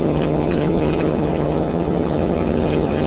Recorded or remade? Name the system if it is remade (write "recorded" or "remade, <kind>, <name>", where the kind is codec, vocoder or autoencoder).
remade, vocoder, HiFi-GAN